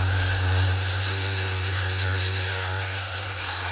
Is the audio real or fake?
fake